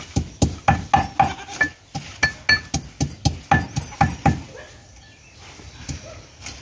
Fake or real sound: real